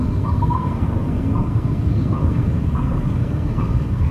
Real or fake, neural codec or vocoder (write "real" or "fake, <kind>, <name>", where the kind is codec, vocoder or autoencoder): fake, codec, SNAC